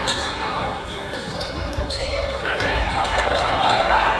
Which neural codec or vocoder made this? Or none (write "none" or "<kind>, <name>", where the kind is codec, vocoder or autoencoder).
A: codec, SNAC